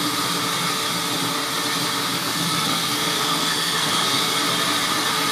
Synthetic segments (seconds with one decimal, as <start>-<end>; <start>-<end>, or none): 2.2-4.2